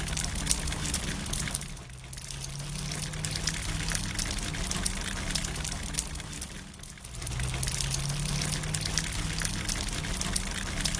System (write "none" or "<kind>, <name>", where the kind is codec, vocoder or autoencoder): none